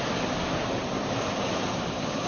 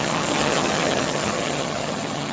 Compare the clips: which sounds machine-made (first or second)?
second